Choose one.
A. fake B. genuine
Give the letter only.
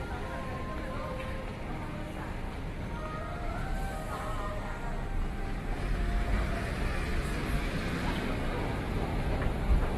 B